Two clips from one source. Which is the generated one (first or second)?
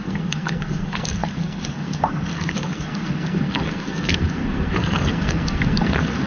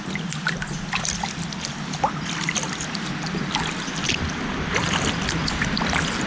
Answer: first